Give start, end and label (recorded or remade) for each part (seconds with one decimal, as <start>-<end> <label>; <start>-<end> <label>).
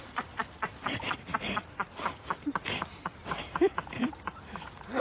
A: 0.0-5.0 remade